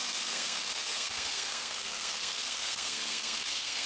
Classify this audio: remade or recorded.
remade